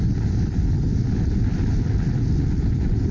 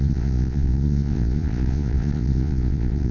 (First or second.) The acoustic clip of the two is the first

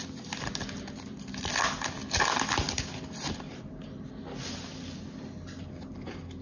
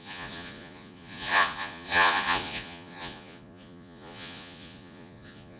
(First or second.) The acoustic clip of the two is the first